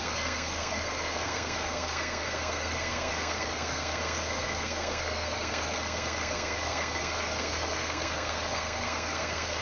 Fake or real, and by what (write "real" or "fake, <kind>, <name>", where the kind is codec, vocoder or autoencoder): fake, codec, SNAC